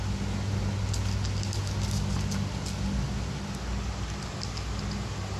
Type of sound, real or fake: real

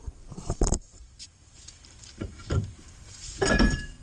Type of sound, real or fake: fake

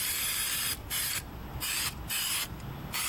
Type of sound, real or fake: real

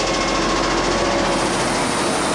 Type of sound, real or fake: real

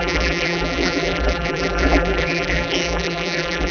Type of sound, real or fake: fake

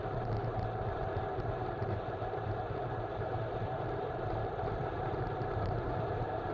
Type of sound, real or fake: fake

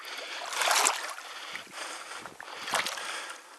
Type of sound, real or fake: real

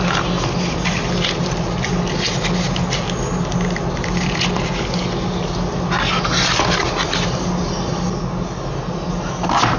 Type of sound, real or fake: real